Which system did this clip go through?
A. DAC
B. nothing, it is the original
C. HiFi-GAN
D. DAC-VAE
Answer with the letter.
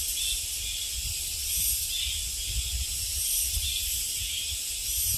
B